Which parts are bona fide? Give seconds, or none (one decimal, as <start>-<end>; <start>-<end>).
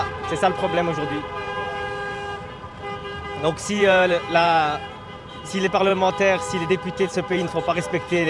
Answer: 5.9-6.7